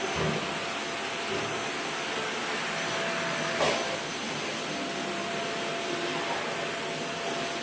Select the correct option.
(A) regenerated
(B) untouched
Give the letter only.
B